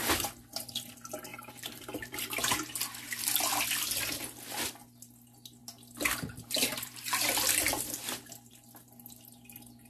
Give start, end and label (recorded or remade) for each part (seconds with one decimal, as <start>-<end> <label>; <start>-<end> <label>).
0.0-1.3 recorded; 1.3-2.9 remade; 2.9-5.6 recorded; 5.6-8.5 remade; 8.5-9.9 recorded